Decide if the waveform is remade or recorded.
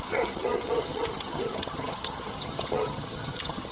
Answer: remade